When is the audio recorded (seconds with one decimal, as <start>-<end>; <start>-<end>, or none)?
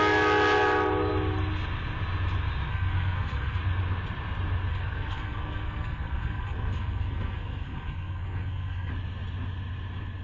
0.0-2.7; 3.6-4.7; 8.9-10.2